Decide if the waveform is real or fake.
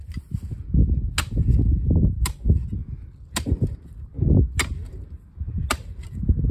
real